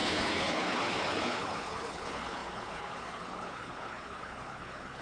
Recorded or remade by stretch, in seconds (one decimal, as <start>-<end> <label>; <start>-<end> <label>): 0.0-5.0 remade